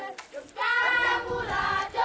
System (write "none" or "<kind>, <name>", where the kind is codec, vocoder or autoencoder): none